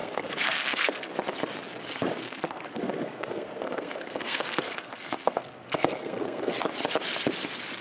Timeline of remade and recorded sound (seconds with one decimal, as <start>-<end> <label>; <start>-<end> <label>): 0.0-1.1 remade; 1.1-2.2 recorded; 2.2-6.5 remade; 6.5-7.8 recorded